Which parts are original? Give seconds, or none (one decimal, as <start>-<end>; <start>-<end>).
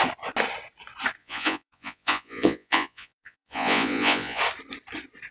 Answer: 0.0-1.2; 4.4-5.3